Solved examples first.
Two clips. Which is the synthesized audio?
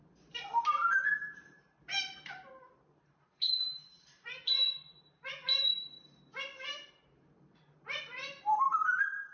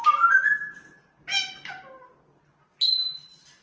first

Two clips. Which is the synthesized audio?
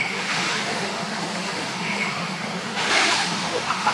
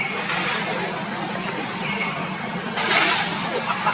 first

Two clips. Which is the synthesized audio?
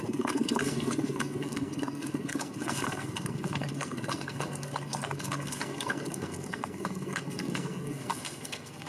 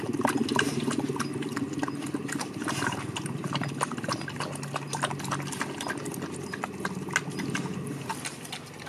first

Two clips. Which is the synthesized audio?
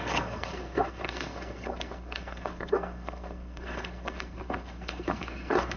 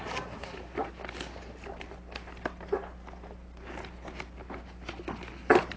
first